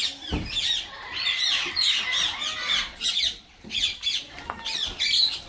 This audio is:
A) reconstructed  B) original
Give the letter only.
A